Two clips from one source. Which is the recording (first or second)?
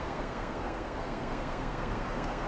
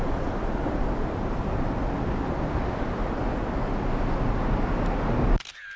second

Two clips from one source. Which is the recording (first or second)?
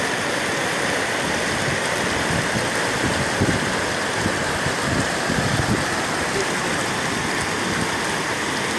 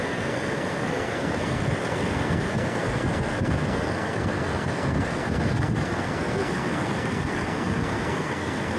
first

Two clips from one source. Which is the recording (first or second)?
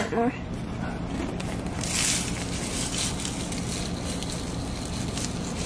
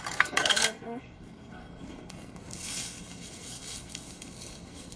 first